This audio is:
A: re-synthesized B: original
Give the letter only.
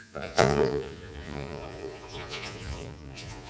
A